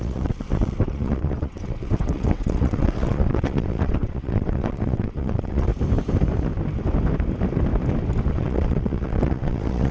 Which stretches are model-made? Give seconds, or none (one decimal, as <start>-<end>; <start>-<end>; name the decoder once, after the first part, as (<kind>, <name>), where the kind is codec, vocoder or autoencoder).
0.0-5.7 (vocoder, WaveNeXt); 8.3-9.9